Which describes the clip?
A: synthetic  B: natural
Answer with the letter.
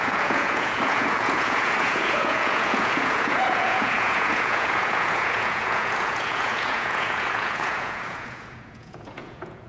A